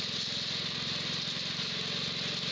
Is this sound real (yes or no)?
yes